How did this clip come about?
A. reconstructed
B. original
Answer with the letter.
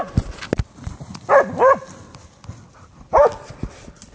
B